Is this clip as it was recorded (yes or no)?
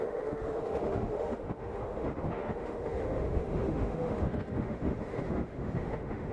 no